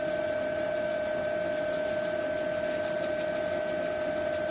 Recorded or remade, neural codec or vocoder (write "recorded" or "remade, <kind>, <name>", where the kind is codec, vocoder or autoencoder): recorded